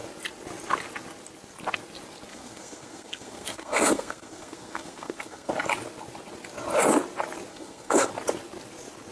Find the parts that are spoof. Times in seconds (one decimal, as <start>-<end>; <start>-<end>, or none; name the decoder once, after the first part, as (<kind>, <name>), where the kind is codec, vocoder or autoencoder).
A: 2.3-5.5 (codec, SNAC); 7.5-8.1